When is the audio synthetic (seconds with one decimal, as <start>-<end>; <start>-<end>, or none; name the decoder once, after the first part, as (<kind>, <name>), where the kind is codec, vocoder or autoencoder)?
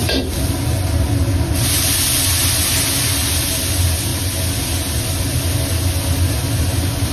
none